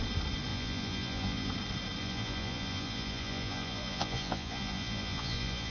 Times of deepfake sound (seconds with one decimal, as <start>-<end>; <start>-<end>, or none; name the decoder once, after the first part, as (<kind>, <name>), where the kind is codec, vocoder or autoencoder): 0.5-1.5 (vocoder, Vocos); 2.0-5.7